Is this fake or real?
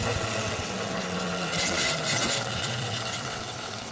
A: fake